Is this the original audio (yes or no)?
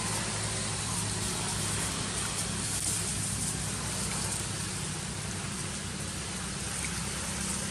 yes